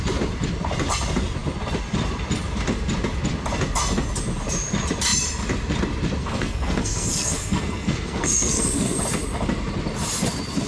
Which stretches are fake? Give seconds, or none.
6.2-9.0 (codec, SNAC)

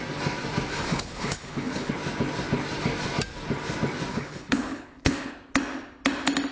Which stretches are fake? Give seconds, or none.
0.7-1.9 (codec, HILCodec); 4.1-5.3

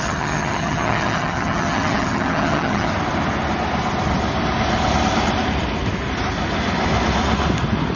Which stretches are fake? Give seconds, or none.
0.0-2.9 (vocoder, HiFi-GAN)

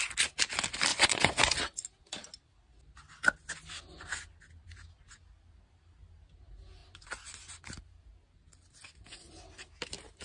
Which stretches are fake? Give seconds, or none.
0.9-1.4 (vocoder, Vocos)

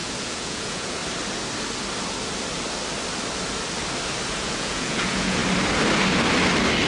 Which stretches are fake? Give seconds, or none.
0.0-1.0 (vocoder, Vocos); 4.3-5.4

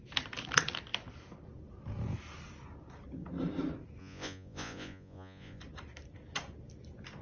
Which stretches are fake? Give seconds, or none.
4.0-5.6 (vocoder, Vocos)

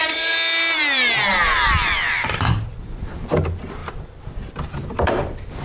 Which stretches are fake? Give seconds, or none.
0.0-5.6 (vocoder, BigVGAN v2)